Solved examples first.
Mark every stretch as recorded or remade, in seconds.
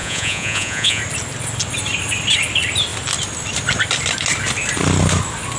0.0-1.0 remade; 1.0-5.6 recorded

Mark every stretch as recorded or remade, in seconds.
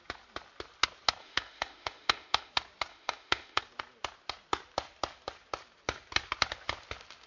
0.0-1.2 recorded; 1.2-2.5 remade; 2.5-2.9 recorded; 2.9-3.6 remade; 3.6-7.3 recorded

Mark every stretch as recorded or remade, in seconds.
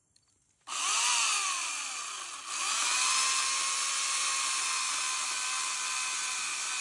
0.0-6.8 recorded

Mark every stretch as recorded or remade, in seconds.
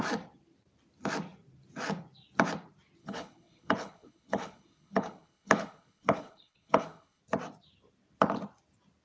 0.0-3.0 recorded; 3.0-7.2 remade; 7.2-9.0 recorded